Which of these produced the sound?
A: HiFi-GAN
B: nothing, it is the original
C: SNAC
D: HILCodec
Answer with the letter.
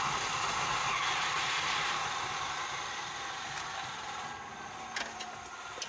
B